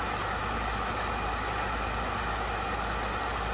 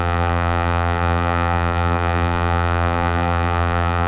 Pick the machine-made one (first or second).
second